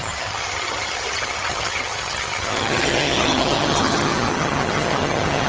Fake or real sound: fake